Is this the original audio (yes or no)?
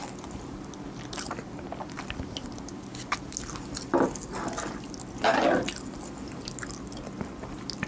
yes